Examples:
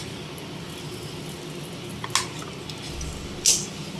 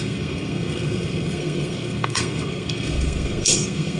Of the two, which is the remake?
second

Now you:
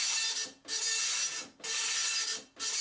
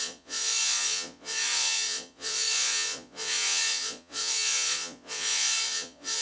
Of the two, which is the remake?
second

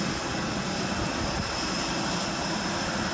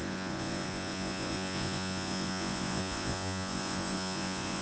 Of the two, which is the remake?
second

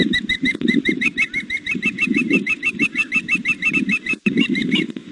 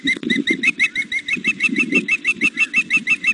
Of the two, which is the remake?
first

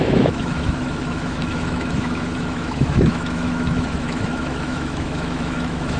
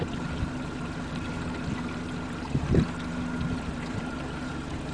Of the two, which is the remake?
first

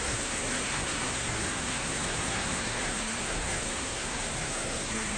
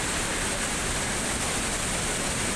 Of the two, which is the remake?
first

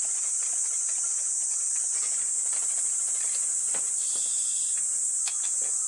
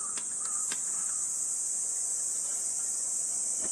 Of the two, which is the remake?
second